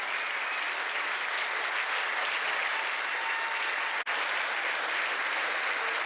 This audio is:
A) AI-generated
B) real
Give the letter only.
B